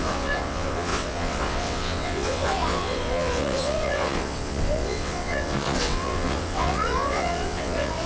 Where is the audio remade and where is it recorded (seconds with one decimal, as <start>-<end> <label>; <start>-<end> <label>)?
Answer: 0.0-8.1 remade